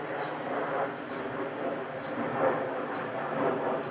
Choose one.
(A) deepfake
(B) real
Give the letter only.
B